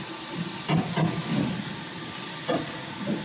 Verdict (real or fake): real